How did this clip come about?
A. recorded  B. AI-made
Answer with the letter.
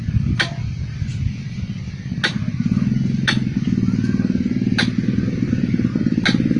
A